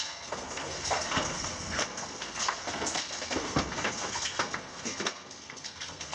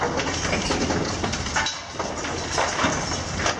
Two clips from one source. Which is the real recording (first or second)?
second